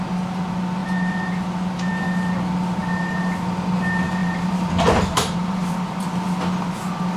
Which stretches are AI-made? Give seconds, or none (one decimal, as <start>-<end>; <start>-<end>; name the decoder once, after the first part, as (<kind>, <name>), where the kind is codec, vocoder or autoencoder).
0.8-1.3 (vocoder, BigVGAN v2); 4.2-5.7

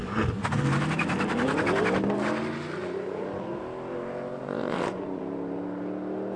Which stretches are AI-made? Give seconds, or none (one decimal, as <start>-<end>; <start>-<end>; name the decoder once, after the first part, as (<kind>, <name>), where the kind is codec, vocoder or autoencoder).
2.8-3.6 (vocoder, Vocos); 4.4-5.2